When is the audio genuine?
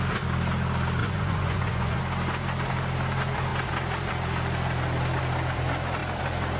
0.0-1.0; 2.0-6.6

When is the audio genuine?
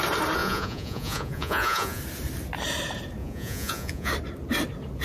0.0-0.4; 2.0-3.2; 4.1-5.0